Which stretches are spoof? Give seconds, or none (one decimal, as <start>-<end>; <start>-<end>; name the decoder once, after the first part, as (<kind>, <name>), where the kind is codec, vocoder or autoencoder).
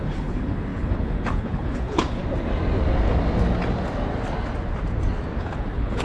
0.0-2.2 (codec, HILCodec); 5.4-6.0